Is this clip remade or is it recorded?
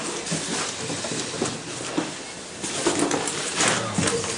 recorded